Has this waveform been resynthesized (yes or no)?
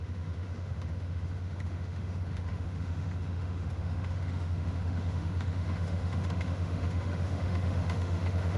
yes